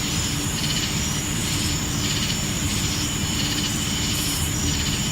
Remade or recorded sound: remade